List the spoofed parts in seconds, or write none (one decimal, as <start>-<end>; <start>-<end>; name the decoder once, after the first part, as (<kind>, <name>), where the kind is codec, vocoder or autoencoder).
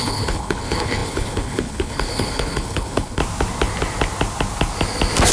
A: 0.0-3.2 (codec, HILCodec)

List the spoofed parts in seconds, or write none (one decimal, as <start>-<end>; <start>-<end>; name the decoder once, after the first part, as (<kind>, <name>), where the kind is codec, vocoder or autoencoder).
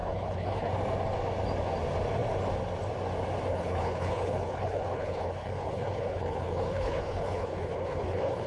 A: 0.0-0.7 (codec, HILCodec); 3.5-8.5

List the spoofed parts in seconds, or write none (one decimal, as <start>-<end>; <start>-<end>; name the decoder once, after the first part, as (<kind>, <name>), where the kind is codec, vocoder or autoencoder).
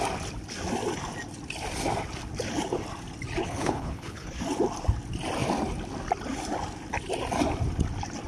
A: 3.4-4.4 (codec, HILCodec)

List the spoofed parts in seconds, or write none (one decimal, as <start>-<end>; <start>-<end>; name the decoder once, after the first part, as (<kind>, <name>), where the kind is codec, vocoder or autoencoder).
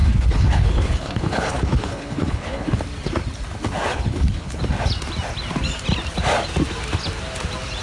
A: 0.0-2.8 (codec, HILCodec); 3.9-4.6